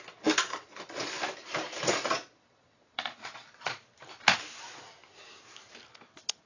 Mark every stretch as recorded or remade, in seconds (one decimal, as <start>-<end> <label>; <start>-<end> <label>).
0.0-0.5 recorded; 0.5-1.1 remade; 1.1-1.9 recorded; 1.9-3.8 remade; 3.8-6.5 recorded

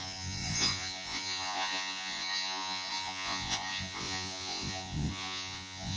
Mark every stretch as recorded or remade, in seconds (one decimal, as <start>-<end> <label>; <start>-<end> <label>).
0.0-6.0 remade